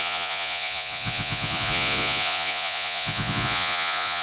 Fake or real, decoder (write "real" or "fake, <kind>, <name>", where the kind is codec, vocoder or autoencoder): fake, vocoder, Vocos